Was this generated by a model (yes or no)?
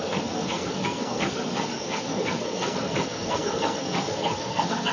yes